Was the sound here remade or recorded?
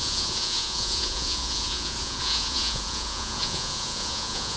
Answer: remade